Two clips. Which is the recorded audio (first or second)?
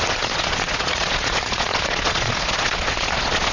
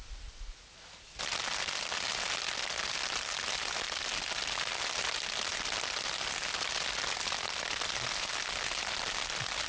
second